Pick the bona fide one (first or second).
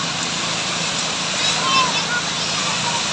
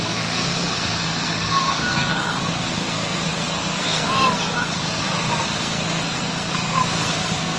first